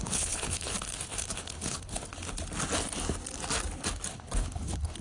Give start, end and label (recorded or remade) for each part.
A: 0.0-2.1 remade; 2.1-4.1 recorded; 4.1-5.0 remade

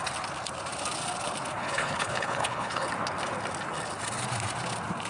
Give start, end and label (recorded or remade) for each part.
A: 0.0-1.6 recorded; 1.6-2.9 remade; 2.9-5.1 recorded

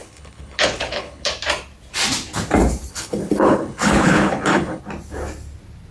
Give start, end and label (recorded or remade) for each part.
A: 0.0-1.3 remade; 1.3-2.9 recorded; 2.9-4.8 remade; 4.8-5.9 recorded

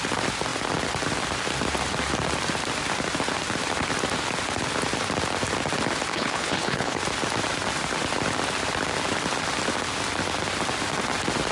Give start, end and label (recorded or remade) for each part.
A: 0.0-6.1 recorded; 6.1-7.0 remade; 7.0-11.5 recorded

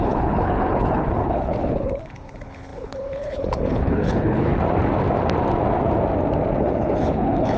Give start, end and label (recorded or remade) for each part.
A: 0.0-4.5 remade; 4.5-6.6 recorded; 6.6-7.6 remade

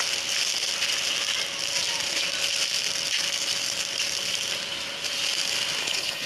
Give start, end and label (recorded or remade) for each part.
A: 0.0-5.8 recorded; 5.8-6.3 remade